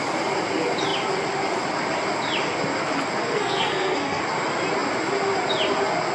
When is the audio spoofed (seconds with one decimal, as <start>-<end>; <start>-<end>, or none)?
3.2-4.2